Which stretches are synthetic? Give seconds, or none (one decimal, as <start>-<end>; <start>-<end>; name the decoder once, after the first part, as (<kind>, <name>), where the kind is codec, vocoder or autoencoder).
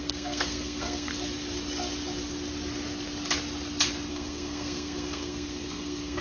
0.0-1.1 (codec, SNAC); 4.1-6.2